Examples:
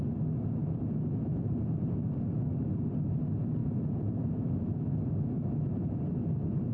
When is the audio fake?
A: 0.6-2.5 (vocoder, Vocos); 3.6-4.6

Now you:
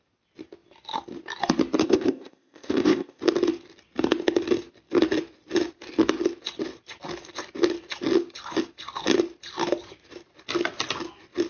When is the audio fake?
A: 1.8-3.2 (codec, ZipCodec)

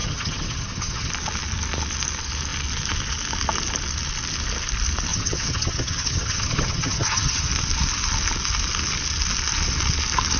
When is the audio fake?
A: 0.0-1.1 (vocoder, HiFi-GAN); 5.1-7.5